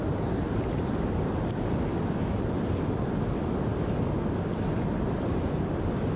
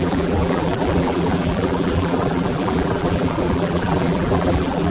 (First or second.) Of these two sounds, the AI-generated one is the second